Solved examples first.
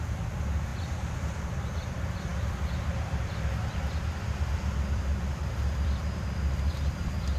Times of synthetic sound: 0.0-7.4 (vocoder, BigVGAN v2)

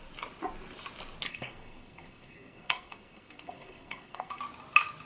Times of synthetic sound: 1.3-4.4 (codec, SNAC)

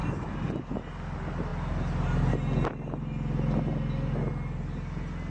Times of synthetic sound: none